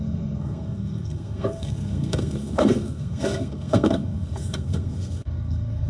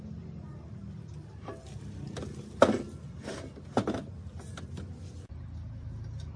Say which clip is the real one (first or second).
second